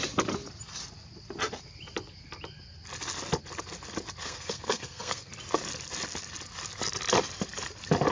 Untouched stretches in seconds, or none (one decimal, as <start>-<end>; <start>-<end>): 0.0-4.2; 5.3-8.1